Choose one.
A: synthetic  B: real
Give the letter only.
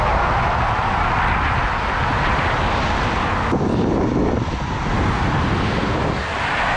B